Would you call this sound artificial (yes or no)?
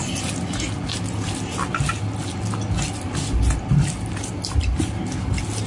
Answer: no